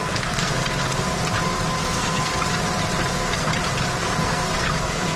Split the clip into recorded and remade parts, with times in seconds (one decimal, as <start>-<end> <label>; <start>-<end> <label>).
0.0-0.6 remade; 0.6-1.8 recorded; 1.8-2.3 remade; 2.3-3.1 recorded; 3.1-3.5 remade; 3.5-4.0 recorded; 4.0-5.2 remade